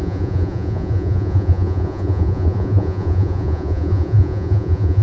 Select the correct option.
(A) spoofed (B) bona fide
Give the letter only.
A